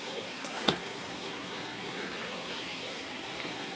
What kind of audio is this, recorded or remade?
remade